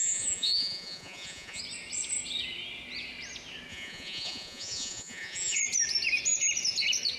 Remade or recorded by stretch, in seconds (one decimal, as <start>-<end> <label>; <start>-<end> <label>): 0.0-1.6 remade; 1.6-3.7 recorded; 3.7-5.6 remade; 5.6-7.2 recorded